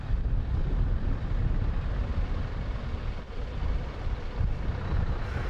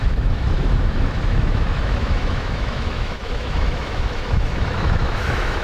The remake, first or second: second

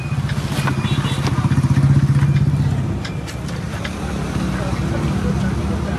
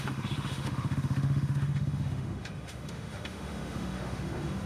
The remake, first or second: second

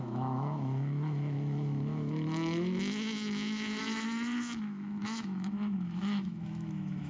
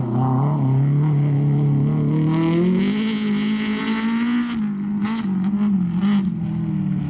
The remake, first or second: first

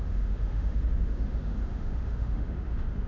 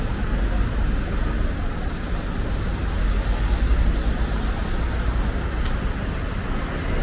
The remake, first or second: first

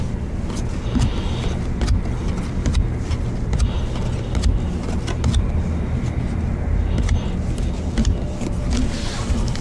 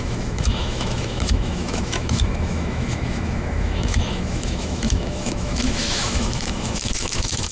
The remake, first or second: second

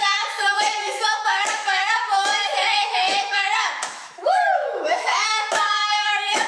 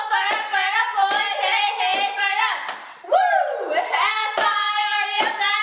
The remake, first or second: first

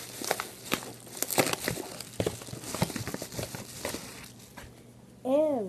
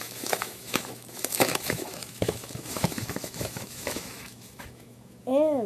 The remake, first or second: second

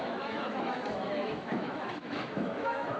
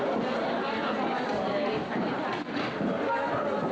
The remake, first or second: first